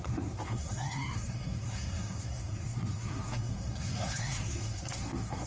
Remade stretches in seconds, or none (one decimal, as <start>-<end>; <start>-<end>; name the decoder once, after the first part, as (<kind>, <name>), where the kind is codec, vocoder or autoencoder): 0.0-5.5 (codec, SNAC)